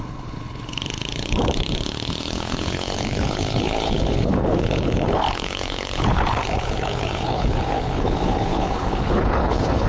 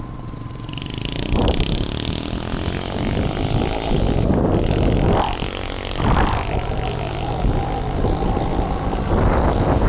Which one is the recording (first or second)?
second